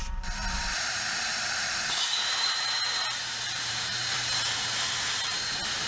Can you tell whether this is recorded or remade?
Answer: remade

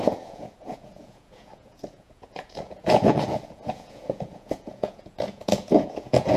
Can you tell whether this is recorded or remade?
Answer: remade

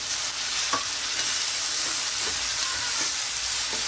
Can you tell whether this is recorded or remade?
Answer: recorded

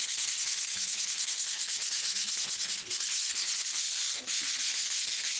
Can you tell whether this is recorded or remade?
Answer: remade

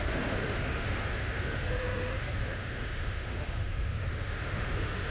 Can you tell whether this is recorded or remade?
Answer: remade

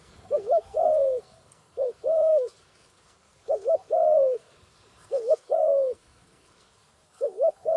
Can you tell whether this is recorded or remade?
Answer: remade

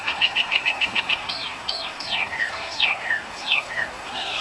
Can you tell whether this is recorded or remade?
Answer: remade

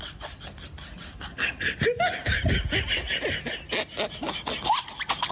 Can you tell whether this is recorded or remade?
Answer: recorded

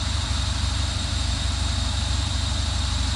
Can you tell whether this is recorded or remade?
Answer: remade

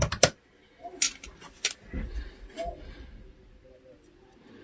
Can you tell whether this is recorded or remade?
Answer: recorded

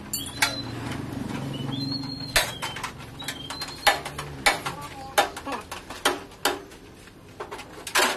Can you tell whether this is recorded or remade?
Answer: recorded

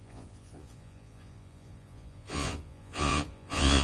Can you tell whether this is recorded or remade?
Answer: remade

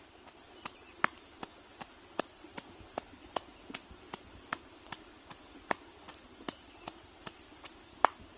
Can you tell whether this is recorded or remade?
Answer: recorded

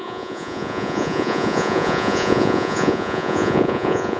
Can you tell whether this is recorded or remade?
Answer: remade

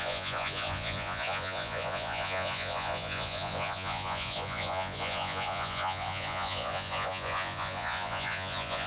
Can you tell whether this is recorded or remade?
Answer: remade